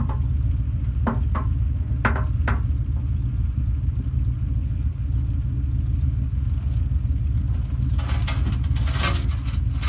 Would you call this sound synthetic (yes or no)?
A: no